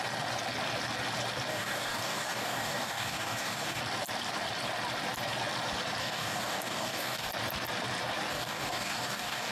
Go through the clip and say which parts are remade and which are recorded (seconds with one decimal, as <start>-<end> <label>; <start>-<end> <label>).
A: 0.0-1.5 recorded; 1.5-3.8 remade; 3.8-6.0 recorded; 6.0-7.3 remade; 7.3-8.3 recorded; 8.3-9.5 remade